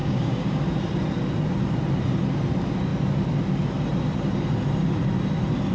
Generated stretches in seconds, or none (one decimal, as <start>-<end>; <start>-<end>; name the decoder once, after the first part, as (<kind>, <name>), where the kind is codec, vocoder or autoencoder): 0.0-0.6 (codec, DAC)